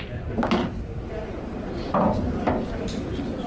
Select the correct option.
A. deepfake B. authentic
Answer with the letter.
B